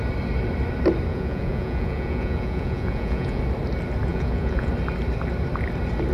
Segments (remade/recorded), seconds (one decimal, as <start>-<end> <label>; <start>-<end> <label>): 0.0-1.1 recorded; 1.1-3.4 remade; 3.4-4.1 recorded; 4.1-4.7 remade; 4.7-6.1 recorded